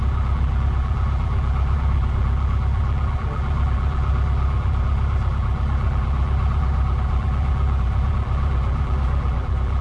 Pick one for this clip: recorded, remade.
remade